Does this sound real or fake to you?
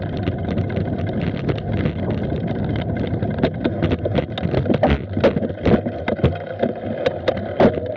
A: real